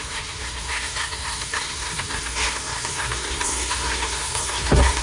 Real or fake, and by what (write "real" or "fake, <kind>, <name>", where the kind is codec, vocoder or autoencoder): fake, codec, SNAC